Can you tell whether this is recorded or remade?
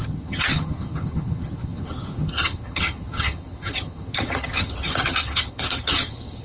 remade